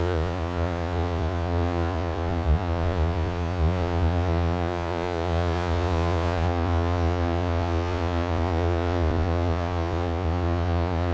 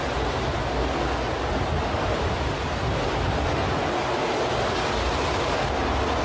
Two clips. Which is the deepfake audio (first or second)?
first